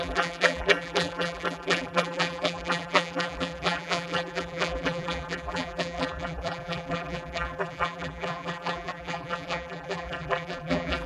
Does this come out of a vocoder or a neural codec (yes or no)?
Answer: yes